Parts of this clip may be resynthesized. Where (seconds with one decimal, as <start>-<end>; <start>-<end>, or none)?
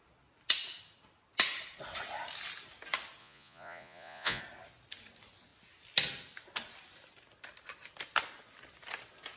3.2-4.4